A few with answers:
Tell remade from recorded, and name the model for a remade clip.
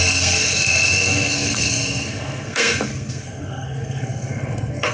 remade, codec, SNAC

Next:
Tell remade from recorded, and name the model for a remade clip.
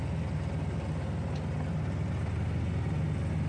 recorded